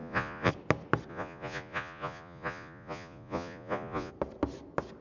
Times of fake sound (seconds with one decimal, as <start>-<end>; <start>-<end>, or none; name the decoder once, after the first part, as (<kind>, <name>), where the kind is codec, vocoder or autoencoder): 0.0-0.5 (vocoder, Vocos); 1.1-4.1